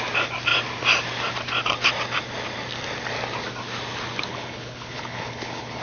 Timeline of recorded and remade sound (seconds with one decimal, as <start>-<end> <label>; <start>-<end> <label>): 0.0-4.3 recorded; 4.3-5.8 remade